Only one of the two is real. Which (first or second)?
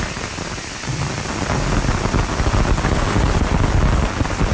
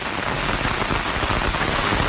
second